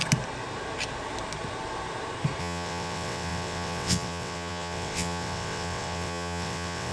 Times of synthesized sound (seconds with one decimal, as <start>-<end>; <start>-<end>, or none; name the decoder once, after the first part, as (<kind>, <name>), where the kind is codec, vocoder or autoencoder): 2.4-6.9 (vocoder, WaveNeXt)